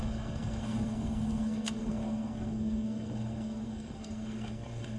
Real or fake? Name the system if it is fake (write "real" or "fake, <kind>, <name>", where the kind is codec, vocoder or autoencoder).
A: fake, codec, SNAC